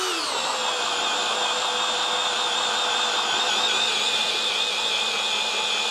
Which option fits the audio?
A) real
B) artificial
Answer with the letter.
A